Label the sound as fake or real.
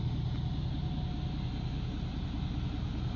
real